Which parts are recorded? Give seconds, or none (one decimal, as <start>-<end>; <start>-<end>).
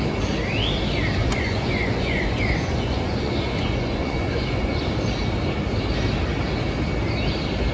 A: 0.0-1.2; 4.8-7.7